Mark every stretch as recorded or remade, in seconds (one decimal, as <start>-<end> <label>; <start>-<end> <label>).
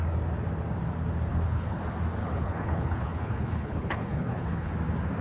0.0-1.3 recorded; 1.3-1.8 remade; 1.8-2.2 recorded; 2.2-4.7 remade; 4.7-5.2 recorded